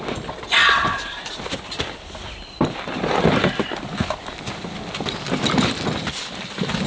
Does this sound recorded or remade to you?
recorded